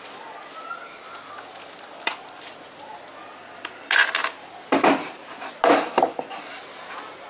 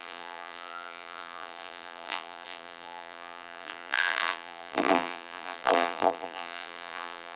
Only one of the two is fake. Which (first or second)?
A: second